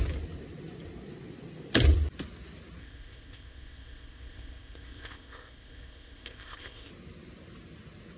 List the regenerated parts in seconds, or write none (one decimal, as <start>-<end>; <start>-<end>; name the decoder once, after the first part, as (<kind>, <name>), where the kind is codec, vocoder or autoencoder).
2.8-6.9 (codec, ZipCodec)